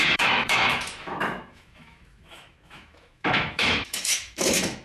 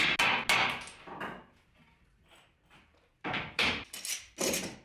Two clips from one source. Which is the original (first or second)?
second